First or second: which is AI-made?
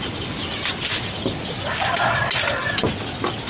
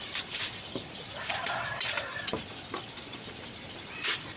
second